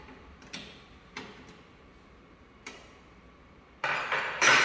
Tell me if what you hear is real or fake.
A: real